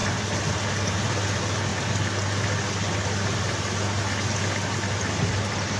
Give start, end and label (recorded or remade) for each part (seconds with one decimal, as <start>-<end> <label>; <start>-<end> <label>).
0.0-5.8 recorded

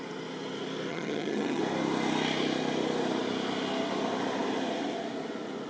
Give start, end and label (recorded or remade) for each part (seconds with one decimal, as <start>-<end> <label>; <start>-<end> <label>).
0.0-0.9 recorded; 0.9-1.6 remade; 1.6-5.7 recorded

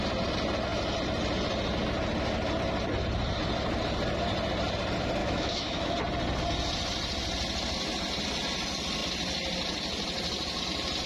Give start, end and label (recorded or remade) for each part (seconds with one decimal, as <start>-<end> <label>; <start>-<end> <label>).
0.0-5.2 recorded; 5.2-5.9 remade; 5.9-11.1 recorded

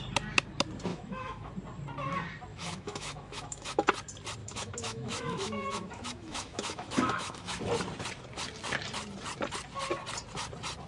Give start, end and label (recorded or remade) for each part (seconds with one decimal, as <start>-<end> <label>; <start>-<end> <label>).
0.0-0.9 recorded; 0.9-1.5 remade; 1.5-2.5 recorded; 2.5-3.9 remade; 3.9-4.4 recorded; 4.4-7.6 remade; 7.6-10.9 recorded

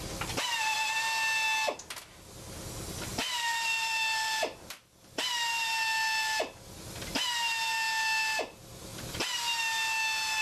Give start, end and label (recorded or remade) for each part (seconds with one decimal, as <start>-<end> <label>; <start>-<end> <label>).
0.0-3.1 recorded; 3.1-4.4 remade; 4.4-10.4 recorded